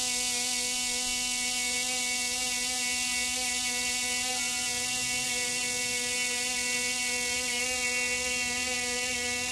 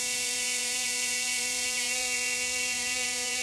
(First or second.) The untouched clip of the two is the first